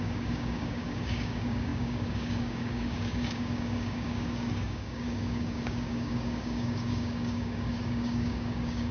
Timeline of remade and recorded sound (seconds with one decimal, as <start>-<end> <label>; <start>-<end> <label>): 0.0-8.9 remade

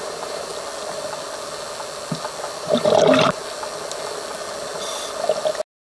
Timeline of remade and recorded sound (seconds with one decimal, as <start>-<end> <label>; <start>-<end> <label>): 0.0-0.5 remade; 0.5-2.6 recorded; 2.6-3.4 remade; 3.4-5.9 recorded

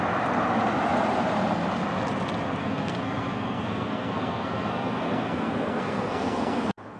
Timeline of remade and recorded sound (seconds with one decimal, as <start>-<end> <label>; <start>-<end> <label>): 0.0-2.6 recorded; 2.6-7.0 remade

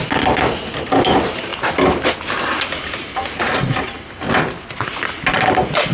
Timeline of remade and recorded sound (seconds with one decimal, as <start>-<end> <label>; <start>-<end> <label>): 0.0-5.9 recorded

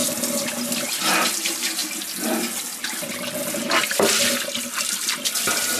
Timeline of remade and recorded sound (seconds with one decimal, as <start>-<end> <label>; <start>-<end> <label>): 0.0-1.0 recorded; 1.0-1.8 remade; 1.8-5.3 recorded; 5.3-5.8 remade

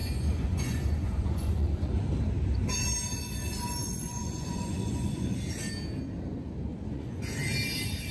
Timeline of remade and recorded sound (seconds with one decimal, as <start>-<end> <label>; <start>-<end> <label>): 0.0-1.9 remade; 1.9-3.8 recorded; 3.8-5.3 remade; 5.3-6.7 recorded; 6.7-7.2 remade; 7.2-8.1 recorded

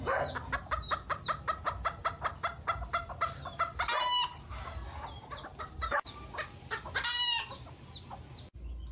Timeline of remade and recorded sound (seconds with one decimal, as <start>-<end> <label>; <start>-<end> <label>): 0.0-2.0 recorded; 2.0-4.3 remade; 4.3-5.5 recorded; 5.5-6.2 remade; 6.2-8.9 recorded

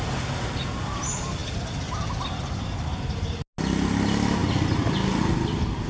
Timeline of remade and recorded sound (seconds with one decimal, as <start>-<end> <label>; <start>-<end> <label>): 0.0-5.9 recorded